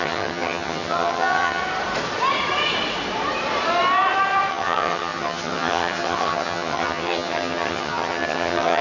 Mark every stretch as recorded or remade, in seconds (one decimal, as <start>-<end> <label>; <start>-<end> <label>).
0.0-1.6 remade; 1.6-4.5 recorded; 4.5-8.8 remade